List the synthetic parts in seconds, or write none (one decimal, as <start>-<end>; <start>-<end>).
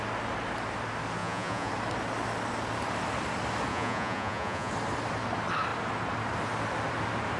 1.2-1.7; 3.7-4.7